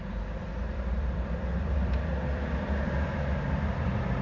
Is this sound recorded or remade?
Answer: remade